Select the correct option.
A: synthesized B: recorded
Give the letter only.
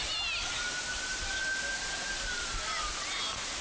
B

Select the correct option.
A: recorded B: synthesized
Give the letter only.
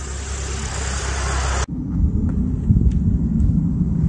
A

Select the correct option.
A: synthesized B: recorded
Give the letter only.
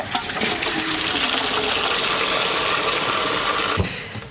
B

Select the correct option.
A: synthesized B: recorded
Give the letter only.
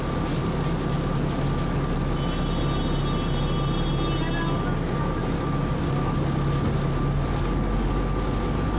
B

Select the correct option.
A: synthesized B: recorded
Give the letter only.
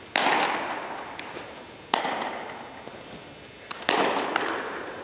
B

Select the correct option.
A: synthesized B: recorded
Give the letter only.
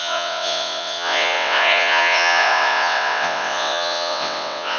A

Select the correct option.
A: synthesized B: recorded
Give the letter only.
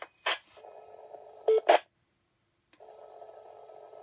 B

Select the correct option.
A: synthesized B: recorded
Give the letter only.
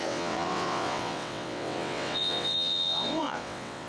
A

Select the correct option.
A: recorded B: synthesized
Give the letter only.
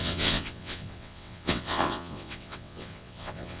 B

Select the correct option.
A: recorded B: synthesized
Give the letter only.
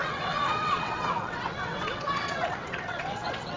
B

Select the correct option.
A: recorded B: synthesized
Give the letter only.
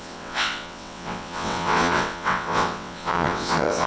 B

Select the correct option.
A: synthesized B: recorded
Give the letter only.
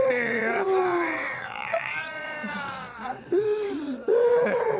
A